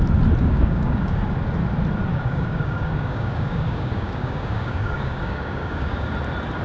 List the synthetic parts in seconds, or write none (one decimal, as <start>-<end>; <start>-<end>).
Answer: 0.4-1.2; 2.1-6.1